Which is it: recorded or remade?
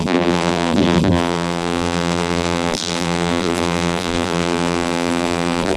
remade